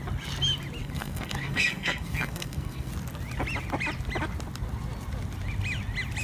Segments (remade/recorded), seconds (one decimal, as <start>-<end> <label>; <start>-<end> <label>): 0.0-0.8 recorded; 0.8-2.9 remade; 2.9-6.2 recorded